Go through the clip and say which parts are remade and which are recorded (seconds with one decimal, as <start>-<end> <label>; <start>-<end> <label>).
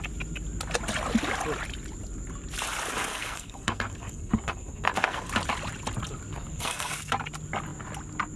0.0-3.1 recorded; 3.1-5.3 remade; 5.3-6.3 recorded; 6.3-7.1 remade; 7.1-8.4 recorded